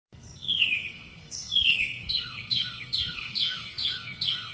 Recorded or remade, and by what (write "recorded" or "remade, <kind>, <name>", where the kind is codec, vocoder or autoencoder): remade, codec, SNAC